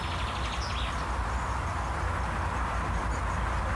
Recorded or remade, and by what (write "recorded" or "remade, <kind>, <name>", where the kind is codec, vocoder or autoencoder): recorded